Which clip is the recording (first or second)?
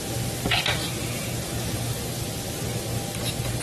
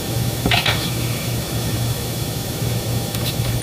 first